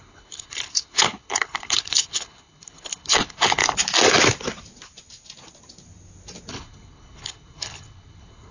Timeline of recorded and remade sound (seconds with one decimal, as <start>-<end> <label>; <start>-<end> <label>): 0.0-3.6 remade; 3.6-6.5 recorded; 6.5-8.5 remade